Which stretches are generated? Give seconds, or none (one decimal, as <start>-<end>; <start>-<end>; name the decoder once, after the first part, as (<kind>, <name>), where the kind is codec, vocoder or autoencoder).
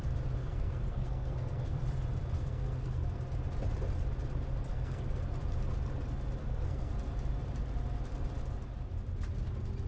0.4-1.8 (codec, SNAC); 2.4-3.2; 4.7-5.2; 6.4-6.9